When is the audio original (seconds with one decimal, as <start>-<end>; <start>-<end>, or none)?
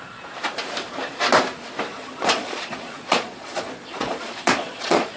0.0-1.9